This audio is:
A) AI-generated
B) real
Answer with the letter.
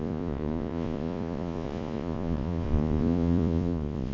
A